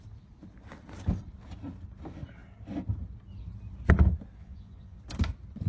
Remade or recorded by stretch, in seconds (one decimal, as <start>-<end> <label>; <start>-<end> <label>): 0.0-4.4 recorded; 4.4-5.0 remade; 5.0-5.7 recorded